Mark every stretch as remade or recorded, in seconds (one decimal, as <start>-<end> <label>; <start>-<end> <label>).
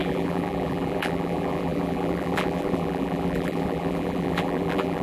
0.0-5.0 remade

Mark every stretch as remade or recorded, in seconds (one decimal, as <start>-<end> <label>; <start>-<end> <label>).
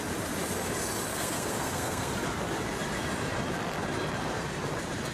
0.0-1.1 recorded; 1.1-2.1 remade; 2.1-5.1 recorded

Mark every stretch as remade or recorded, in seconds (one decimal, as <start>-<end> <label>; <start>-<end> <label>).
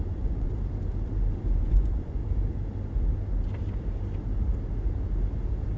0.0-0.5 remade; 0.5-1.6 recorded; 1.6-2.2 remade; 2.2-5.8 recorded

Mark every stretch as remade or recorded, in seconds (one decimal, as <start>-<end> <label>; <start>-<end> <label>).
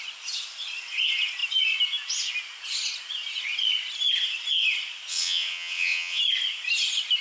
0.0-5.1 recorded; 5.1-6.2 remade; 6.2-7.2 recorded